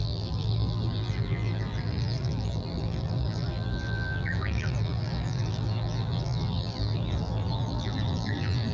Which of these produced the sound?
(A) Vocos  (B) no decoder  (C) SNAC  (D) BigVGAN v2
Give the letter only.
D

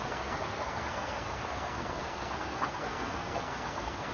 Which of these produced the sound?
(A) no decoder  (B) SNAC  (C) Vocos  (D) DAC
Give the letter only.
B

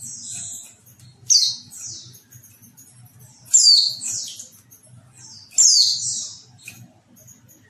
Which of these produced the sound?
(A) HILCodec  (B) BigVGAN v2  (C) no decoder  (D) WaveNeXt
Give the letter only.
C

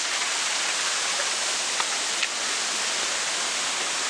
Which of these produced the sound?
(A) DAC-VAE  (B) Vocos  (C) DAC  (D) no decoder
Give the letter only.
D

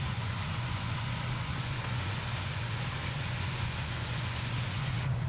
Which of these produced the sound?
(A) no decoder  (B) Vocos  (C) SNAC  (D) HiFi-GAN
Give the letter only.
B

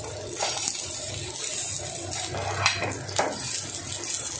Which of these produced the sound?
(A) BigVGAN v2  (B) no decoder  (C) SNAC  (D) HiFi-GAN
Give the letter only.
B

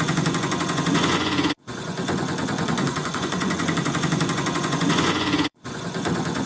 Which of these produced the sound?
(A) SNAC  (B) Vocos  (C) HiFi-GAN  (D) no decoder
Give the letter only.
B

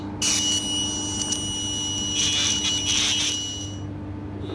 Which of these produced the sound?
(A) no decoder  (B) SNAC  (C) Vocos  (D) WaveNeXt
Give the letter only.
A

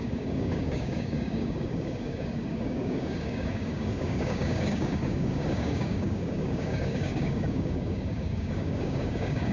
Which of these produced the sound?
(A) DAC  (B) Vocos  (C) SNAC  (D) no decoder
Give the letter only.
A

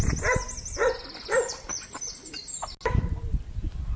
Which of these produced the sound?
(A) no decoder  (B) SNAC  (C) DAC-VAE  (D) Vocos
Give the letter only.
A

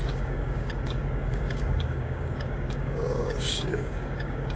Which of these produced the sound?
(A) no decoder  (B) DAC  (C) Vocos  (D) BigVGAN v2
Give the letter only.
B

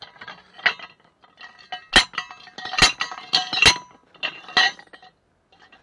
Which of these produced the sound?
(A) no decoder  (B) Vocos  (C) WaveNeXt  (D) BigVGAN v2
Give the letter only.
A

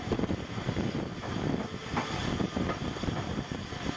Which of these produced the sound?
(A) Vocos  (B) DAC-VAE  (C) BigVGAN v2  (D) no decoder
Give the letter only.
D